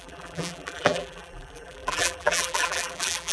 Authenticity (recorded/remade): remade